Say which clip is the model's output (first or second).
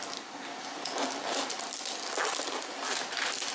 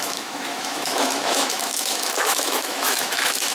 second